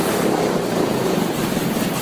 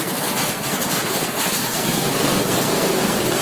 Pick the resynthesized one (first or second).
second